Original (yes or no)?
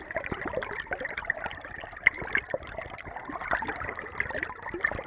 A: yes